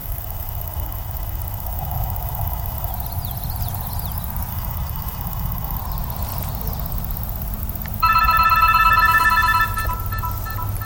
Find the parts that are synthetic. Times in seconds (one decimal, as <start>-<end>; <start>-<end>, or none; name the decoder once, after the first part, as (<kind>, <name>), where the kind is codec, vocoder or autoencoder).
0.0-2.9 (autoencoder, DAC-VAE); 4.5-5.8